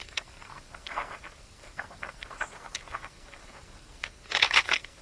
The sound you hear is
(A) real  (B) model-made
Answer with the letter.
B